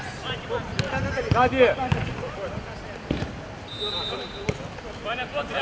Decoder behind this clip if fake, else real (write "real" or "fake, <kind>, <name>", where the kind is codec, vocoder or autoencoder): real